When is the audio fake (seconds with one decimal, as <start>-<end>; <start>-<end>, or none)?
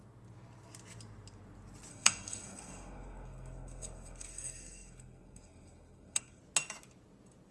1.9-6.4